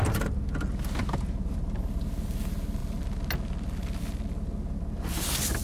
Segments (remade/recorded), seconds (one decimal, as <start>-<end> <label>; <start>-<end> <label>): 0.0-5.6 recorded